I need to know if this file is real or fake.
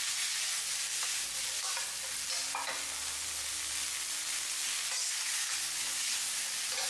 real